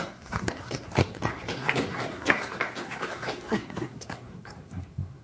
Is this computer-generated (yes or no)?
yes